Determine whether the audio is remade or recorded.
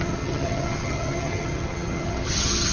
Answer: remade